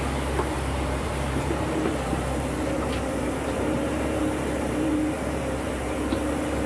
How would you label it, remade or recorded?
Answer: remade